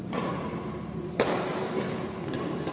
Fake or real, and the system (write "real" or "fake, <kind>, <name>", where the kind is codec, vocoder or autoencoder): real